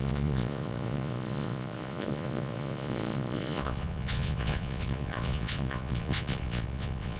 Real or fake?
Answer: fake